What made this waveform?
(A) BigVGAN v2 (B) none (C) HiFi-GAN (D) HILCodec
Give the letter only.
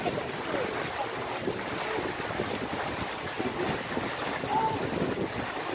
B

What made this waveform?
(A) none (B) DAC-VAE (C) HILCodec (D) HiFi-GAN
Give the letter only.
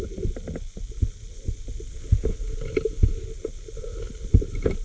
A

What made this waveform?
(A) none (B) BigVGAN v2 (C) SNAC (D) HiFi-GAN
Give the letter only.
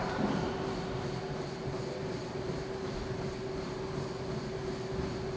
A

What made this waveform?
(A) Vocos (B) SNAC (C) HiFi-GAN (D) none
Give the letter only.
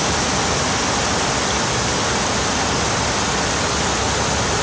D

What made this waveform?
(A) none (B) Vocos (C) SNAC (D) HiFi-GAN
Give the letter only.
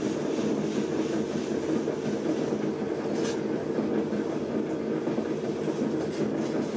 A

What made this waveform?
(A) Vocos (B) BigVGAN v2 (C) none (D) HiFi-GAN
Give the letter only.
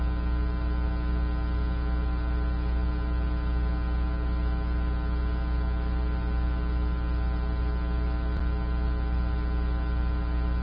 C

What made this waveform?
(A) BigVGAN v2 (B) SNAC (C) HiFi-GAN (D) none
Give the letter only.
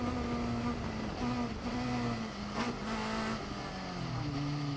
D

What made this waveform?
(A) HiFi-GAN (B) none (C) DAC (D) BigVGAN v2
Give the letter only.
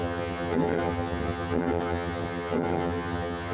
A